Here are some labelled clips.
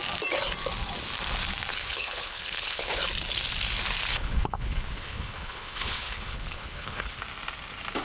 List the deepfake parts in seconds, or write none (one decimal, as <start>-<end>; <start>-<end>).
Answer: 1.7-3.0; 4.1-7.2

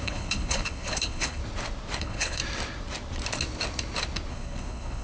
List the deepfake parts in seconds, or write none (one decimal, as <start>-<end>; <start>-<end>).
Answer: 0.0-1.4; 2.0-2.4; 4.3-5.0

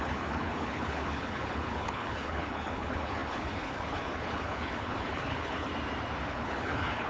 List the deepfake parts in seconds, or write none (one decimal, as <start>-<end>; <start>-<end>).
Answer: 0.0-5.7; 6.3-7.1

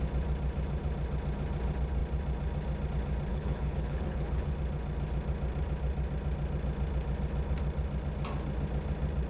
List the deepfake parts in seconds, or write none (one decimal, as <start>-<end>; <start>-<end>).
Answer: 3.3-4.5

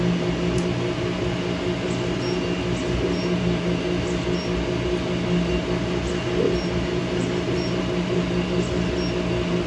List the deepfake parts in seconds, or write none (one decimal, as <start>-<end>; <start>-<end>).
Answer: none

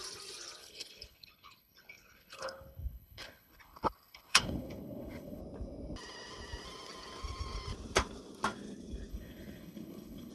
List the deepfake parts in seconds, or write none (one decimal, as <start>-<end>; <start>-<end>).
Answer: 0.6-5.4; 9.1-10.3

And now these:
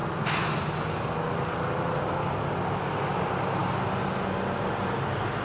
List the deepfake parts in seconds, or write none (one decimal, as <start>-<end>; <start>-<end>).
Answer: none

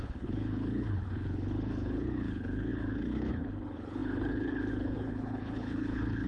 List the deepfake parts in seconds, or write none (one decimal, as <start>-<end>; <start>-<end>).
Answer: 0.0-6.3